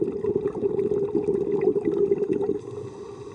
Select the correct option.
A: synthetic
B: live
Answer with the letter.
B